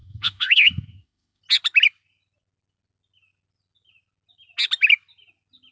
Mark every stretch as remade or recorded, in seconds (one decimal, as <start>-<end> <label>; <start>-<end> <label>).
0.0-1.4 remade; 1.4-5.7 recorded